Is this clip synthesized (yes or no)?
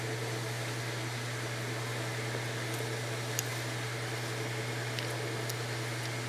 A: no